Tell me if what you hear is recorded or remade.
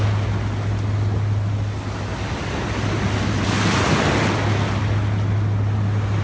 recorded